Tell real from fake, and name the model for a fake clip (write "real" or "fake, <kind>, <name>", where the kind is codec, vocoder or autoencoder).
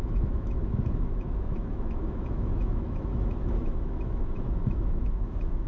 fake, autoencoder, DAC-VAE